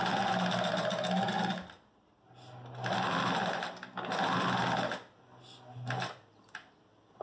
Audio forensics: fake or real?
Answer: real